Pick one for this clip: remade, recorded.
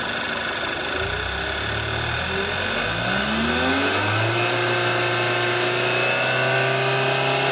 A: recorded